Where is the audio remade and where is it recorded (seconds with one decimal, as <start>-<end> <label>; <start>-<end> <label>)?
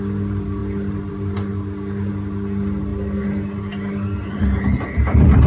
0.0-5.5 recorded